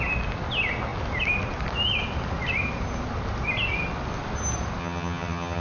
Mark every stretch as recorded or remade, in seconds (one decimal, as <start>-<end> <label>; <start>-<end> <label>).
0.0-4.8 recorded; 4.8-5.6 remade